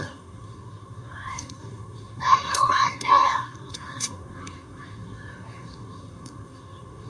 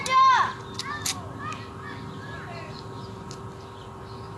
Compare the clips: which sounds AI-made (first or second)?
first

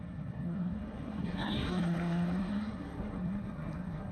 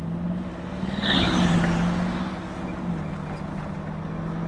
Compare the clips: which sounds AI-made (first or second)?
first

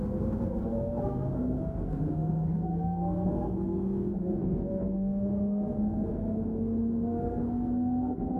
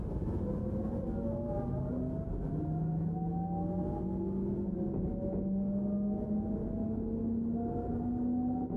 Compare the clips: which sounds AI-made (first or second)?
first